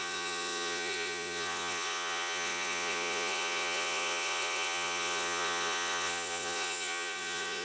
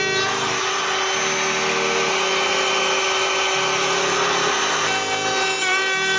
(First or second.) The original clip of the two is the second